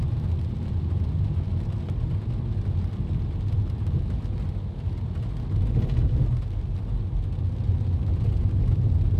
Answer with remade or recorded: recorded